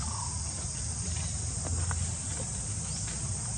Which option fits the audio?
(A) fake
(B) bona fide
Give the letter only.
B